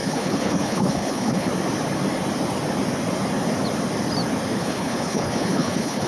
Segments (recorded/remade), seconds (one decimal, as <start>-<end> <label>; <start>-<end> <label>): 0.0-1.5 remade; 1.5-4.6 recorded; 4.6-6.1 remade